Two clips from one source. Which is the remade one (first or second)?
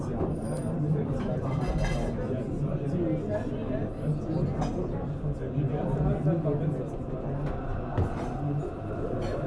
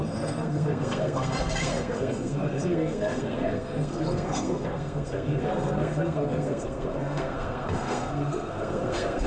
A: second